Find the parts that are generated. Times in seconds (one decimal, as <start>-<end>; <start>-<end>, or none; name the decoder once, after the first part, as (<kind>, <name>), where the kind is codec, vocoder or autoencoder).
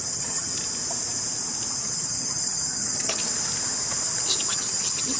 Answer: 0.0-0.5 (vocoder, HiFi-GAN); 1.8-3.2; 4.5-5.2